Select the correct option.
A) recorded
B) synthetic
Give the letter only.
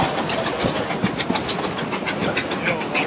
A